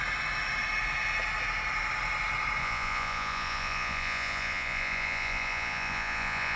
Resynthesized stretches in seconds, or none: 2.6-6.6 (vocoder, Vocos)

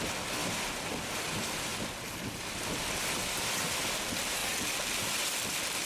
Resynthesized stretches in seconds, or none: 0.0-0.4 (vocoder, BigVGAN v2); 1.1-1.7; 2.5-4.4; 5.0-5.9

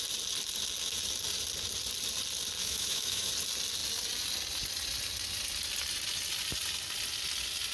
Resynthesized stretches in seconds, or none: 2.6-3.3 (autoencoder, DAC-VAE)

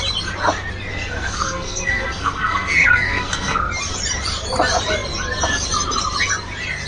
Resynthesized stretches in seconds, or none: 0.9-3.7 (codec, SNAC)

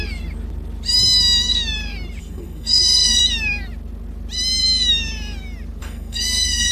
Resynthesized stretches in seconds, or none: 2.2-3.2 (codec, SNAC); 5.8-6.7

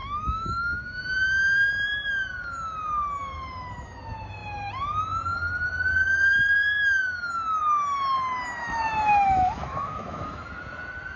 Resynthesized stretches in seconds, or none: 0.0-1.0 (autoencoder, DAC-VAE); 8.6-10.5